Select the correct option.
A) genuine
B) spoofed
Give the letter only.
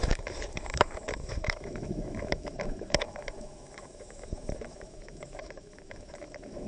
B